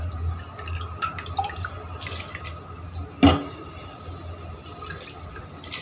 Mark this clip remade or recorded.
recorded